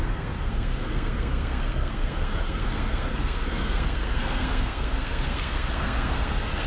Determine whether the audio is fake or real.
fake